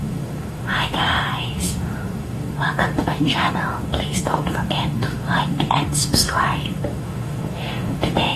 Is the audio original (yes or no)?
no